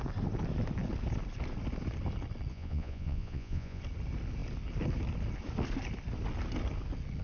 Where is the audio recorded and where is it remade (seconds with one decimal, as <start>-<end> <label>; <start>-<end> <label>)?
0.0-2.5 recorded; 2.5-3.8 remade; 3.8-7.2 recorded

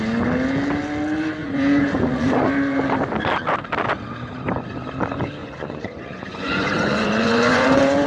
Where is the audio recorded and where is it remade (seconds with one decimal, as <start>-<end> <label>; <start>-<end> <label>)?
0.0-1.4 recorded; 1.4-2.5 remade; 2.5-5.4 recorded; 5.4-8.1 remade

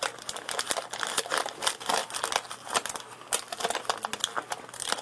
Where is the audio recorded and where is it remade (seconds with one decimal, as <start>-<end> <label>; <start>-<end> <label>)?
0.0-5.0 recorded

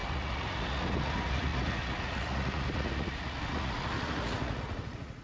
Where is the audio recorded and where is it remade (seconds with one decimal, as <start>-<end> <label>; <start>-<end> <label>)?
0.0-5.2 remade

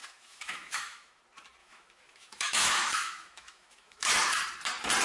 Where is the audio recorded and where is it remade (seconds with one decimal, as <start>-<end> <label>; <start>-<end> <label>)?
0.0-1.2 remade; 1.2-1.6 recorded; 1.6-4.1 remade; 4.1-5.0 recorded

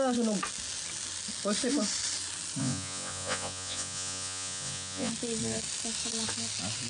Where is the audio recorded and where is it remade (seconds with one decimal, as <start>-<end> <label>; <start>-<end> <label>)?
0.0-2.6 recorded; 2.6-5.1 remade; 5.1-6.9 recorded

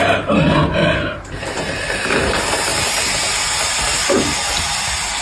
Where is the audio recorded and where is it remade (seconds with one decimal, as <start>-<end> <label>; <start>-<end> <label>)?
0.0-5.2 remade